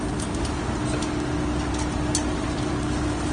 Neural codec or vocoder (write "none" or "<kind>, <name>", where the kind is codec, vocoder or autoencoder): none